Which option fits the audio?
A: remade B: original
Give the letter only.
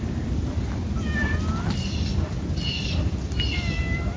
B